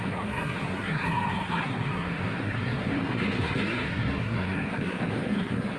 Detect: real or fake fake